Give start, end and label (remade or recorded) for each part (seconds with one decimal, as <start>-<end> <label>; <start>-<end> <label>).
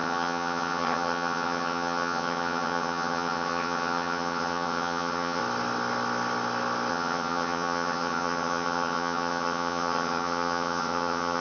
0.0-5.4 remade; 5.4-6.9 recorded; 6.9-11.4 remade